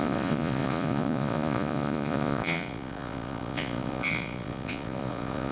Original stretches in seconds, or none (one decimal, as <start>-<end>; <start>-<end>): none

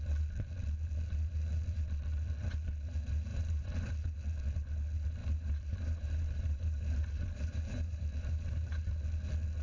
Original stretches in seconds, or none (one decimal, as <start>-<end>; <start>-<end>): 0.0-3.3; 3.9-5.2; 8.8-9.6

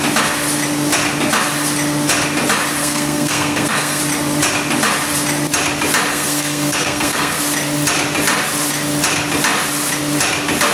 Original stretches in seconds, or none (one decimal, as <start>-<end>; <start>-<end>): 0.0-2.8; 4.0-6.1; 7.4-10.7

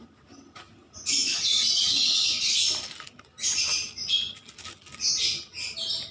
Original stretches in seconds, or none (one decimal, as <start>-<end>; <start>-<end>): 0.0-6.1

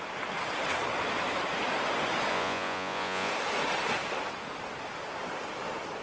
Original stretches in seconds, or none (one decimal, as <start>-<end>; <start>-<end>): 0.0-2.3; 3.3-6.0

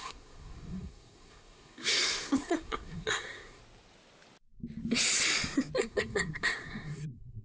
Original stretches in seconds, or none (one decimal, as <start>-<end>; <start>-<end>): 3.6-5.8

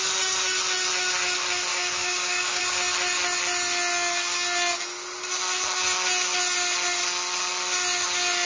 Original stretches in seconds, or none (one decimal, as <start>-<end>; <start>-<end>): 0.0-1.7; 2.6-8.4

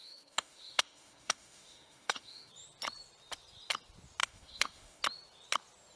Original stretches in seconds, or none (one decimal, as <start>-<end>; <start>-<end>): 2.5-4.2; 5.0-6.0